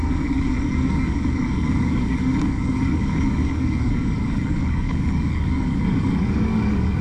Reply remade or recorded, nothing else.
remade